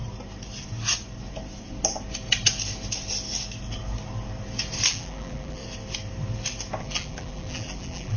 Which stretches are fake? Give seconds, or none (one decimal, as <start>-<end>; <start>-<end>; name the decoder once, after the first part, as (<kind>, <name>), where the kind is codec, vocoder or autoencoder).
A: 4.9-5.6 (vocoder, BigVGAN v2); 6.8-8.2